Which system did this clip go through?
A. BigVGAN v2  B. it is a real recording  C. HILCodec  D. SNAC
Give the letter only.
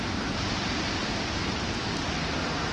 B